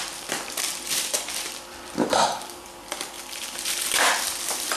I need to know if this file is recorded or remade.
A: remade